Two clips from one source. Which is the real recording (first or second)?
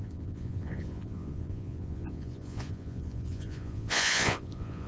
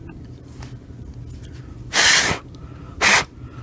second